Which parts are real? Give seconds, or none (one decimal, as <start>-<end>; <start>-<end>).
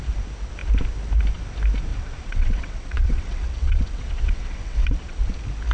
0.0-1.9; 5.3-5.7